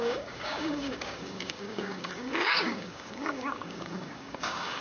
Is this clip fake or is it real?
fake